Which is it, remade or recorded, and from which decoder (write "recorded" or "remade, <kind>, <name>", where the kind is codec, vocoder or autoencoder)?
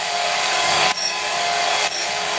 remade, codec, DAC